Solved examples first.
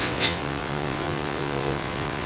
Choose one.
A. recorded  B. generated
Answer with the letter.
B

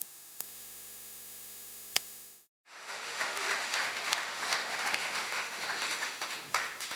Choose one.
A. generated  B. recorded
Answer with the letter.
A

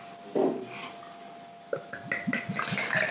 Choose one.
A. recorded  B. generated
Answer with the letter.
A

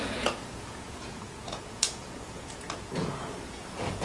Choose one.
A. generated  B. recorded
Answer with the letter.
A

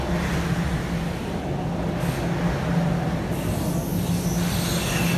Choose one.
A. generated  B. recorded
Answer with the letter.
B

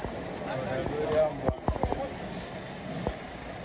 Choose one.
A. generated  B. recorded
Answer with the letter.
B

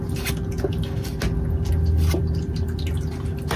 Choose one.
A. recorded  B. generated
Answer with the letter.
A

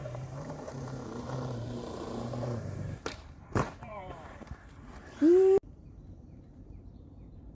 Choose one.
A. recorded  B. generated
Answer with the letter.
B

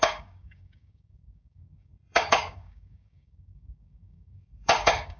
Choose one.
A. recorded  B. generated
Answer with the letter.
B